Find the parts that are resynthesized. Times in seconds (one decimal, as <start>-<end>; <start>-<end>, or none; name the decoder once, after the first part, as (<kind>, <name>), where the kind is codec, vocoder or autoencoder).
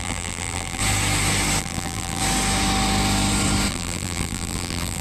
0.0-0.8 (vocoder, BigVGAN v2); 1.6-2.2; 3.7-5.0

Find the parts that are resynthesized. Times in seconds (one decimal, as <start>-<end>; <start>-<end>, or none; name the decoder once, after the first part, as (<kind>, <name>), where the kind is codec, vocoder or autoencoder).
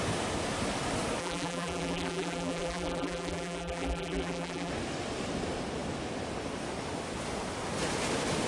1.2-4.7 (vocoder, BigVGAN v2)